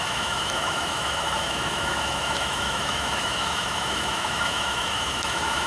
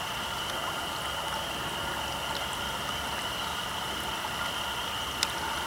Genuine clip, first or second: second